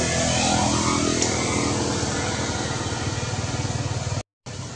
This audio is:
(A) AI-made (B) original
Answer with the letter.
B